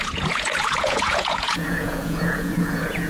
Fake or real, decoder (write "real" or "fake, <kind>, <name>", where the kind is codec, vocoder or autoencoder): fake, vocoder, Vocos